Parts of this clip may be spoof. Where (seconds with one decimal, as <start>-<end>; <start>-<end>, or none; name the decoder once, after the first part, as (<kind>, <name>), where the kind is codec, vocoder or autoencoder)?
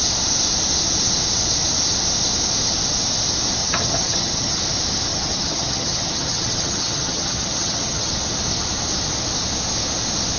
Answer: 3.6-4.6 (vocoder, HiFi-GAN); 5.1-8.1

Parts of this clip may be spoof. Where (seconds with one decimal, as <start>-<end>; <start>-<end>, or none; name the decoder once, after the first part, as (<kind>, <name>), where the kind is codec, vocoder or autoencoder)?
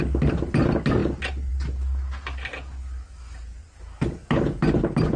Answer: none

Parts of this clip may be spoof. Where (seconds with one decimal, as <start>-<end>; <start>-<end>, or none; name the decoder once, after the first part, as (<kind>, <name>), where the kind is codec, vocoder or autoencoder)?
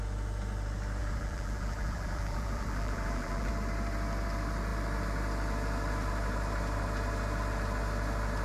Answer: 1.0-3.5 (vocoder, BigVGAN v2)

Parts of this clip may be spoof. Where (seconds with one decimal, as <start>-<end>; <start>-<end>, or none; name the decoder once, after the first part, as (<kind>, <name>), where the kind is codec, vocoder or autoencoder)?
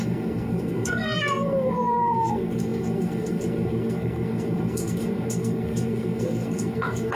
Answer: 0.0-7.2 (codec, SNAC)